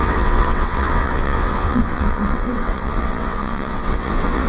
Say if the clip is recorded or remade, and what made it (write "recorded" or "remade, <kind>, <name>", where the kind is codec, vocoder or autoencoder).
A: remade, vocoder, WaveNeXt